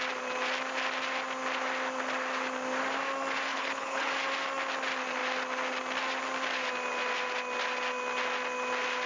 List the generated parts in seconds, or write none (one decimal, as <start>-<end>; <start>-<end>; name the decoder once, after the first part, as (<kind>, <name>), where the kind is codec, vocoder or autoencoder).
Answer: 3.5-4.1 (codec, HILCodec)